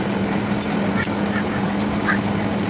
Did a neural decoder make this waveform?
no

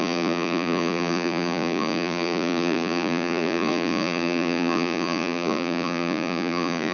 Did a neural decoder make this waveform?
yes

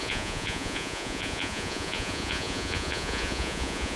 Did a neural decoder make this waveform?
yes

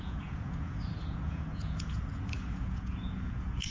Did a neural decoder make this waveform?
yes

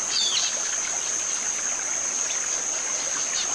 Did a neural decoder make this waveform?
no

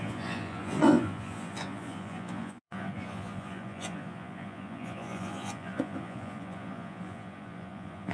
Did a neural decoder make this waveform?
yes